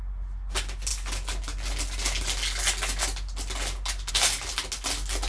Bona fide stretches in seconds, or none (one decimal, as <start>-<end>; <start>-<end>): 0.0-5.3